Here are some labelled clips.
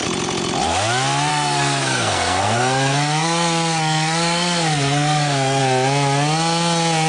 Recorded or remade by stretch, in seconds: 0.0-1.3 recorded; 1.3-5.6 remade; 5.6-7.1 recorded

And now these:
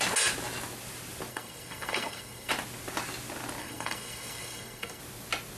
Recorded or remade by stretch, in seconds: 0.0-1.3 recorded; 1.3-2.5 remade; 2.5-3.6 recorded; 3.6-5.0 remade; 5.0-5.6 recorded

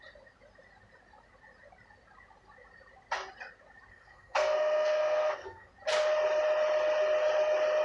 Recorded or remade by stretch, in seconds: 0.0-3.9 recorded; 3.9-5.7 remade; 5.7-7.8 recorded

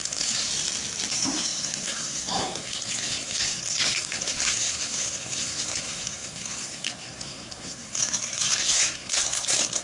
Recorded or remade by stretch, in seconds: 0.0-0.5 remade; 0.5-1.1 recorded; 1.1-9.8 remade

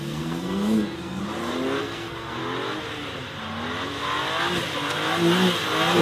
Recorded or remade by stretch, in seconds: 0.0-1.2 remade; 1.2-1.8 recorded; 1.8-2.4 remade; 2.4-6.0 recorded

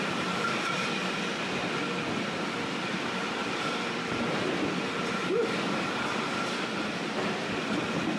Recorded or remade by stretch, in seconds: 0.0-8.2 recorded

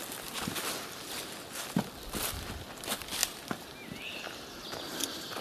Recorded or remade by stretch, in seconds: 0.0-5.4 recorded